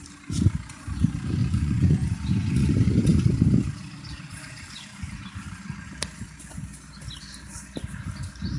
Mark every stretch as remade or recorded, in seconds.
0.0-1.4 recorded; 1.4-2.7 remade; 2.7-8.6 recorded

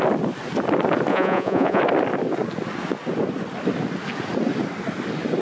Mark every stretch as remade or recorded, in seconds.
0.0-1.1 recorded; 1.1-1.8 remade; 1.8-5.4 recorded

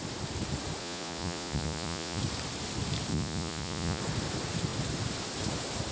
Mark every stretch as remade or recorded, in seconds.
0.0-0.8 recorded; 0.8-2.2 remade; 2.2-3.1 recorded; 3.1-4.0 remade; 4.0-5.9 recorded

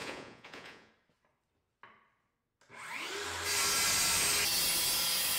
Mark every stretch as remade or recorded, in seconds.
0.0-0.9 remade; 0.9-5.4 recorded

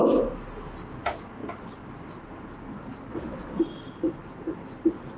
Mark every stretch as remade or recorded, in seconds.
0.0-3.1 recorded; 3.1-3.6 remade; 3.6-5.2 recorded

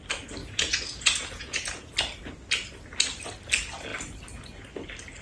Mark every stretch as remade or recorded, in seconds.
0.0-0.4 recorded; 0.4-1.9 remade; 1.9-5.2 recorded